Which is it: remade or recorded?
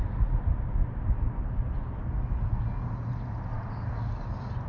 recorded